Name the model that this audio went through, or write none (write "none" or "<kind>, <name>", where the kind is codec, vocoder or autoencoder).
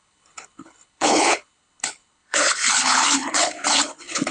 codec, HILCodec